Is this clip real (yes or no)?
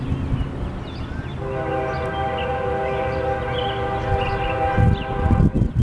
yes